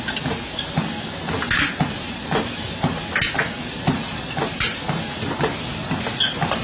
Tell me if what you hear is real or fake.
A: real